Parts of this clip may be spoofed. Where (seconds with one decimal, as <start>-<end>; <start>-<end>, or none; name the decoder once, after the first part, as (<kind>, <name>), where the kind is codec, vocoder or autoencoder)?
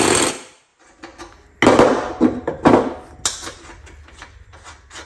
none